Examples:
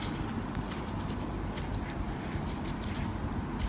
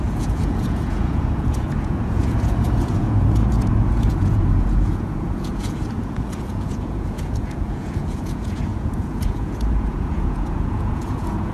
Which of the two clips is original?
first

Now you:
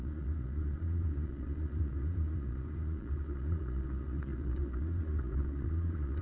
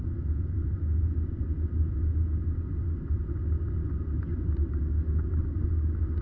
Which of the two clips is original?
second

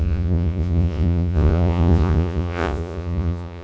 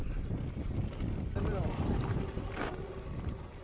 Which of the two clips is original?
second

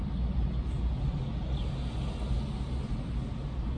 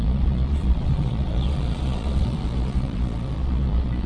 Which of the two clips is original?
first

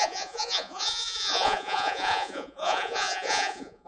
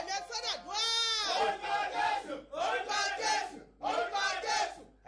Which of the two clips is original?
second